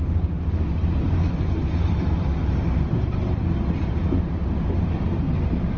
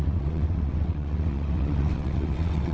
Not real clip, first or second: second